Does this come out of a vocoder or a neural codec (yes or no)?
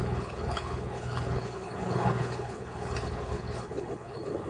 yes